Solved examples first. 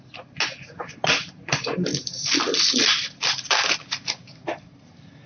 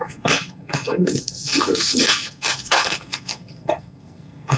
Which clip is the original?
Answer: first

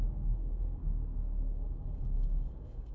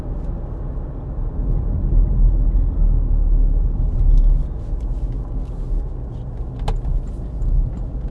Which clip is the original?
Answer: second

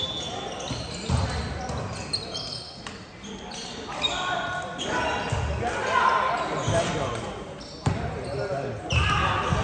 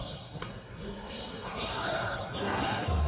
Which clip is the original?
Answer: first